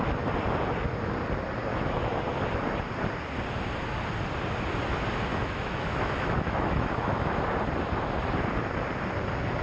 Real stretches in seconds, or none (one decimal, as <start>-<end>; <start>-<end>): 0.0-1.7; 2.2-5.3; 7.4-9.6